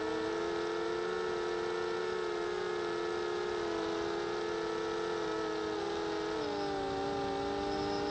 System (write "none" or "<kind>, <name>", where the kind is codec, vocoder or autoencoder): none